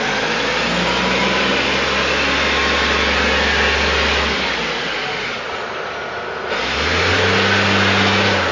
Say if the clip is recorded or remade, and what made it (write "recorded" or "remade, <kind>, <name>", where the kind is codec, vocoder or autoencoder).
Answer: recorded